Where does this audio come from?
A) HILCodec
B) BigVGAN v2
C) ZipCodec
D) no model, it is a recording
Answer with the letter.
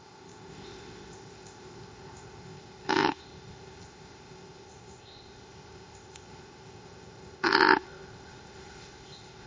C